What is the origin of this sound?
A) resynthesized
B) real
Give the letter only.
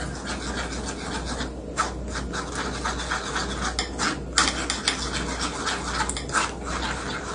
B